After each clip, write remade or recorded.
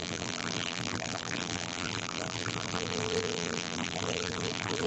remade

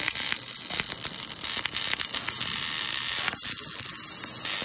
recorded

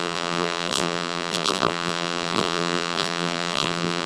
remade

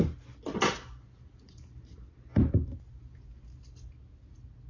recorded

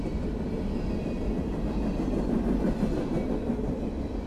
recorded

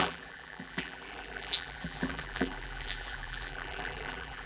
remade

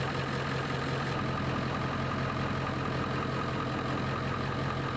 recorded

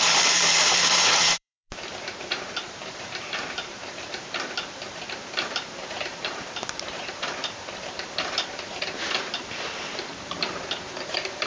remade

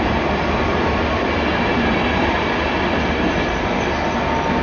recorded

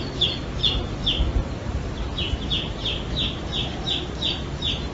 recorded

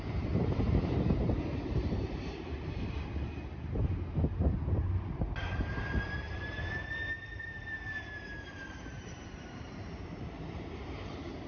remade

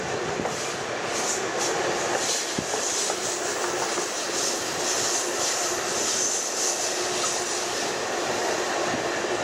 recorded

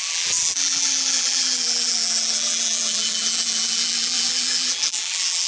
remade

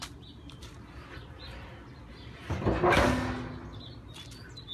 recorded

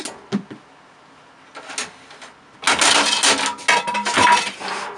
recorded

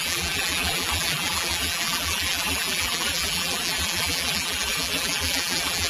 remade